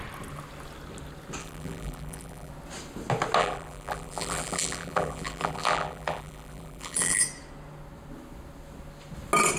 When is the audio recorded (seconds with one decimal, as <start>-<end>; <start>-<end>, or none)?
0.0-1.4; 2.5-3.4; 7.2-9.6